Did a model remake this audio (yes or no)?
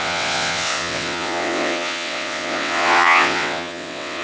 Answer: yes